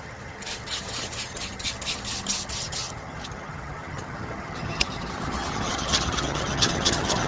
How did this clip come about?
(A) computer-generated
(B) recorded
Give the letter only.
A